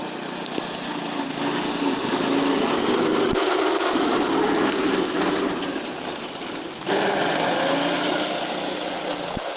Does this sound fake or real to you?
real